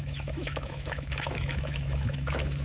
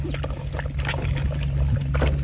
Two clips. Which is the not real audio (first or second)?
first